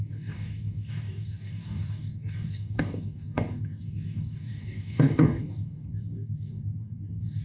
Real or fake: fake